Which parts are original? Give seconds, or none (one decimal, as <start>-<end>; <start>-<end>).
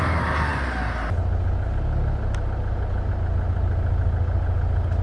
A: 0.0-5.0